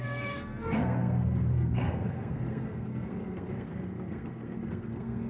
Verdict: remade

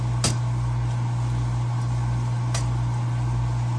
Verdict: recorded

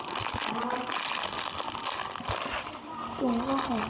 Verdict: recorded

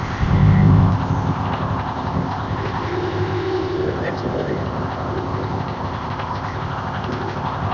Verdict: remade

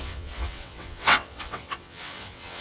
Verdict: remade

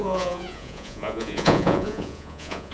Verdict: remade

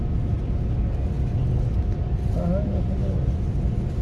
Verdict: recorded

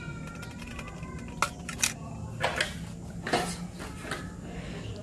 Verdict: recorded